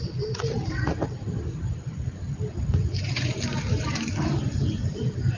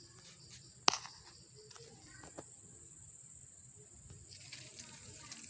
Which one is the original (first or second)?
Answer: second